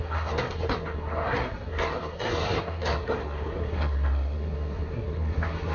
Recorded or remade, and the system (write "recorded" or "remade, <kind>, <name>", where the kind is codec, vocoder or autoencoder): remade, codec, SNAC